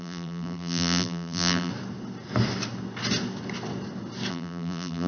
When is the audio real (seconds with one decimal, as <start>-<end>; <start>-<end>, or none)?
1.7-4.3